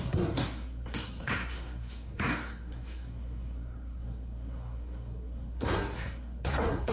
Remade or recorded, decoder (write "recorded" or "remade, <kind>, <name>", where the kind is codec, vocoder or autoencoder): remade, codec, SNAC